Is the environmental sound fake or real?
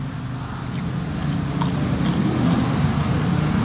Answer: real